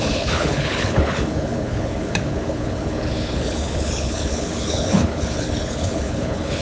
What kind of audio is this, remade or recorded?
remade